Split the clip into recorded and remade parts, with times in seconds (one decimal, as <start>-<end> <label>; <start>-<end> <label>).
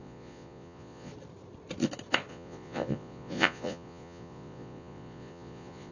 0.0-1.1 remade; 1.1-2.3 recorded; 2.3-5.9 remade